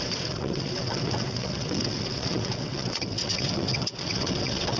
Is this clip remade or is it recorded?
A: remade